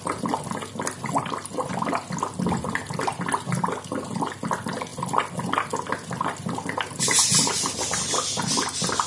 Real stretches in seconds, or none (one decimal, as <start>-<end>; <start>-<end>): 0.0-9.1

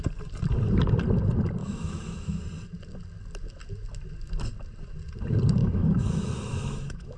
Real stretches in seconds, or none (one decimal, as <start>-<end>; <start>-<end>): 0.0-1.6; 2.4-5.6

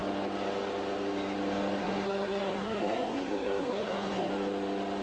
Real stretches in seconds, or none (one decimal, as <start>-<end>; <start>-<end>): 0.0-1.8; 4.3-5.0